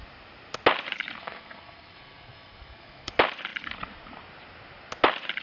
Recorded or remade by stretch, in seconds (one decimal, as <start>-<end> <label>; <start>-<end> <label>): 0.0-1.2 recorded; 1.2-3.1 remade; 3.1-5.4 recorded